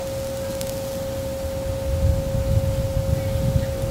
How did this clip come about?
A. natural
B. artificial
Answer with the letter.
A